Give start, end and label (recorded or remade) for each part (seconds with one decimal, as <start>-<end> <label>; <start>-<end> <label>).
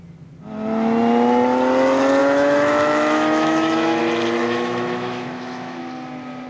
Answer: 0.0-2.2 recorded; 2.2-4.0 remade; 4.0-4.4 recorded; 4.4-5.8 remade; 5.8-6.5 recorded